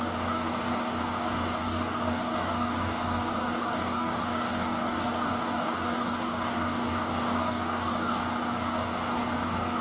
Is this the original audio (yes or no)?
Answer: no